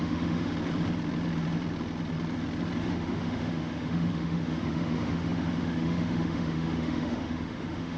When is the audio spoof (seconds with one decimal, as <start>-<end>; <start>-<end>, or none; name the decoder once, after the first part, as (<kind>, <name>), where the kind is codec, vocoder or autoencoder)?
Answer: 0.0-0.5 (autoencoder, DAC-VAE); 2.8-8.0